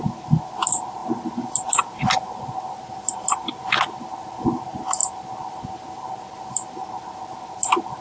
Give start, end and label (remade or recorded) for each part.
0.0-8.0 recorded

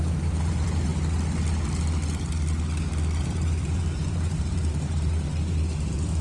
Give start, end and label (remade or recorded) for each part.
0.0-0.9 remade; 0.9-3.2 recorded; 3.2-6.2 remade

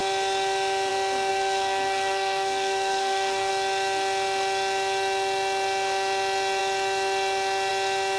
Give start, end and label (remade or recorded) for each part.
0.0-1.3 recorded; 1.3-3.5 remade; 3.5-8.2 recorded

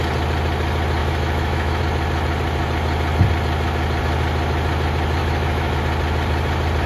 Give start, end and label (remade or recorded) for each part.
0.0-1.0 recorded; 1.0-1.8 remade; 1.8-5.2 recorded; 5.2-5.8 remade; 5.8-6.9 recorded

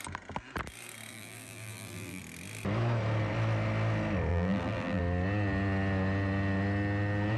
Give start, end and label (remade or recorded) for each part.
0.0-1.1 recorded; 1.1-2.2 remade; 2.2-4.3 recorded; 4.3-5.0 remade; 5.0-7.4 recorded